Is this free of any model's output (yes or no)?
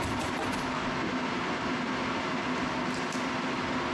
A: yes